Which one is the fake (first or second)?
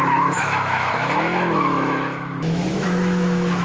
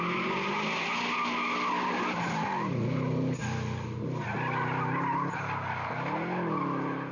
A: first